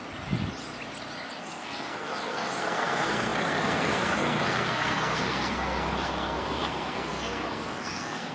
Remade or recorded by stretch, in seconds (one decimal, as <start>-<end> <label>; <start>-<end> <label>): 0.0-1.4 recorded; 1.4-8.3 remade